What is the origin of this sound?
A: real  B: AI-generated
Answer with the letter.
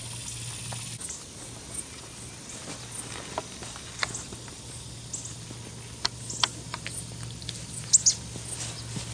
A